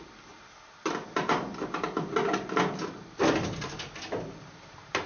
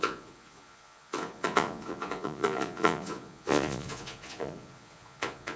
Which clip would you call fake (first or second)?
second